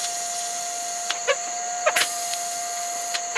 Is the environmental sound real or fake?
real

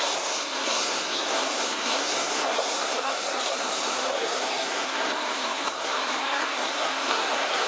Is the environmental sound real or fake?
fake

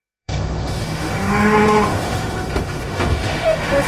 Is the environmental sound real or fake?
fake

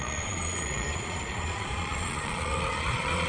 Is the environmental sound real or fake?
fake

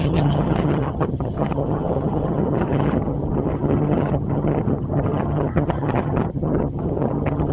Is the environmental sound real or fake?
fake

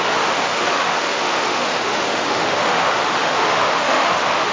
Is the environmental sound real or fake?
fake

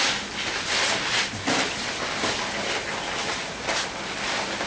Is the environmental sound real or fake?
real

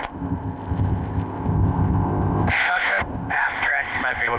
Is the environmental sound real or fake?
fake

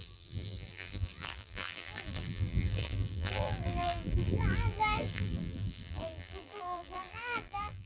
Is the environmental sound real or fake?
fake